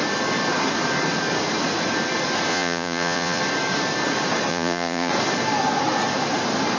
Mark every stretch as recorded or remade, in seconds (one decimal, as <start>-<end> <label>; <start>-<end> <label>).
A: 0.0-2.5 recorded; 2.5-3.4 remade; 3.4-4.5 recorded; 4.5-5.1 remade; 5.1-6.8 recorded